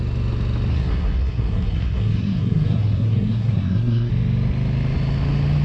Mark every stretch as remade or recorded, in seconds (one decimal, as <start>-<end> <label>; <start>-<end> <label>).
0.0-0.7 recorded; 0.7-4.1 remade; 4.1-5.6 recorded